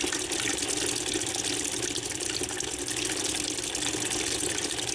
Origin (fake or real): real